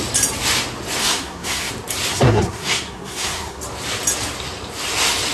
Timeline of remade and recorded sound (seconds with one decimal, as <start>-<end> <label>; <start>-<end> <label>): 0.0-1.0 recorded; 1.0-1.7 remade; 1.7-2.1 recorded; 2.1-3.6 remade; 3.6-5.3 recorded